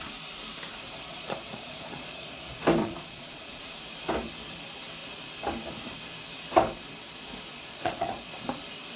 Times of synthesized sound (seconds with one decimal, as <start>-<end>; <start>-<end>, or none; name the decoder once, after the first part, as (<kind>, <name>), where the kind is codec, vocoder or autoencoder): 1.1-2.4 (vocoder, Vocos); 2.8-3.6; 7.5-8.3